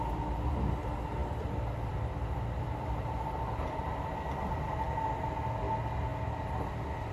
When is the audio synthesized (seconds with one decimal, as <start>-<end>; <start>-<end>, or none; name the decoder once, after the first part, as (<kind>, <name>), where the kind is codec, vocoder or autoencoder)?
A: 1.2-4.0 (vocoder, BigVGAN v2)